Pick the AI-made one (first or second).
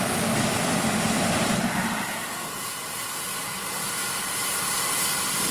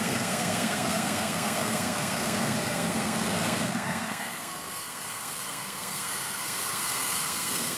second